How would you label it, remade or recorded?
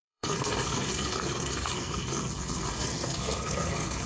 remade